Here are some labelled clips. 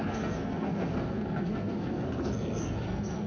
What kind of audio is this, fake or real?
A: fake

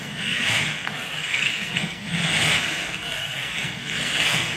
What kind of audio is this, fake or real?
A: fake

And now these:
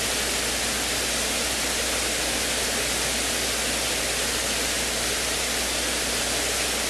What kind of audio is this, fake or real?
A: real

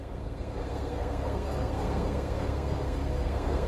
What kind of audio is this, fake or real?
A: fake